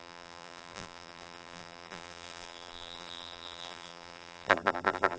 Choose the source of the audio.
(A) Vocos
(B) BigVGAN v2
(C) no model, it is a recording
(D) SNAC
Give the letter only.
B